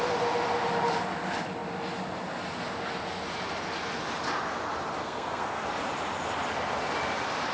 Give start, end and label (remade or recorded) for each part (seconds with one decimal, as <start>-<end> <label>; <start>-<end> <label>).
0.0-5.0 recorded; 5.0-5.6 remade; 5.6-7.5 recorded